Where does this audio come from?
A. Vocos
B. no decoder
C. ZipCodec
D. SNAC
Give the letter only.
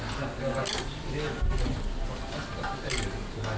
B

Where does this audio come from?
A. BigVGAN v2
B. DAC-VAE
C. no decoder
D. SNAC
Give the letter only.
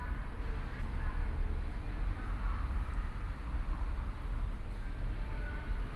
C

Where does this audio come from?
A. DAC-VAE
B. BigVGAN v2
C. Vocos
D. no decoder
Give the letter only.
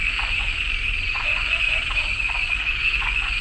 C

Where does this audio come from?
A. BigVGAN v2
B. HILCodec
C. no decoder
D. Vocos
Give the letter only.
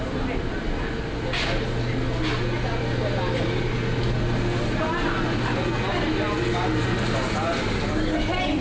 C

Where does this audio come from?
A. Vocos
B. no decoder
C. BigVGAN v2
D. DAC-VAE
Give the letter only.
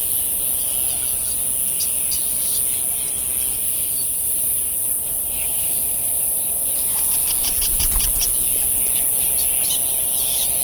B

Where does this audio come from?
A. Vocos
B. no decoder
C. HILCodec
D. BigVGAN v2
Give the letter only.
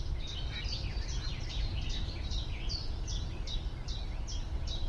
D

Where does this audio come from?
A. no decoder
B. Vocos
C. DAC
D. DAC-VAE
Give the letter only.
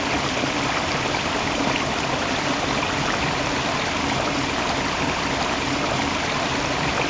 A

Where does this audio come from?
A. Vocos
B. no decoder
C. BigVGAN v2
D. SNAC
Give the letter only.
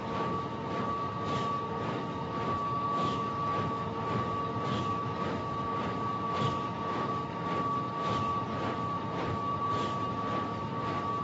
B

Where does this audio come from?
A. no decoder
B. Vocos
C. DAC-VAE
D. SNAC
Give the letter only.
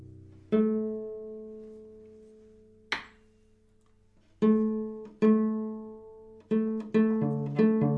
A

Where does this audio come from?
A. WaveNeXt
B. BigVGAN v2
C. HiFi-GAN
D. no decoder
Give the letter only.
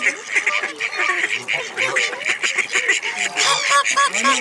D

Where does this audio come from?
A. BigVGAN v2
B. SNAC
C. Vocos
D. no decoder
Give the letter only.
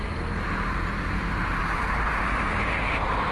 D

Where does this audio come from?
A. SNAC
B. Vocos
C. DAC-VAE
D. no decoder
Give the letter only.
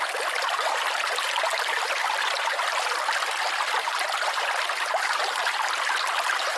D